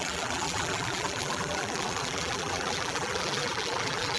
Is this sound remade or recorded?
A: remade